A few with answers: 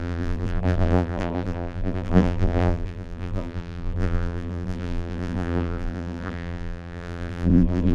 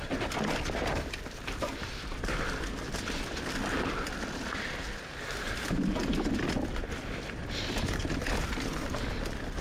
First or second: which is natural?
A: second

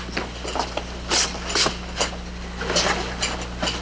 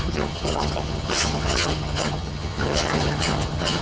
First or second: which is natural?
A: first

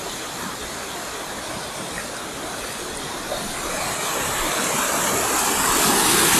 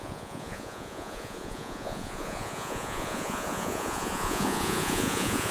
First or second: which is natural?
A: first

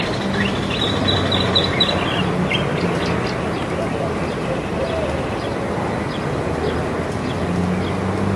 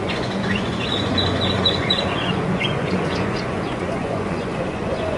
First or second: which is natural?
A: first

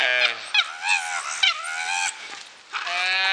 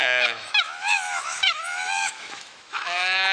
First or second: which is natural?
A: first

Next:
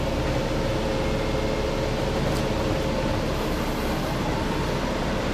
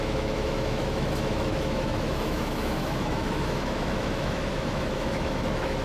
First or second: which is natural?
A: first